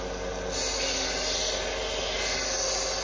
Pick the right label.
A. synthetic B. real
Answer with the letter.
B